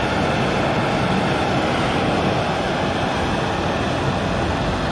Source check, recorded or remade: recorded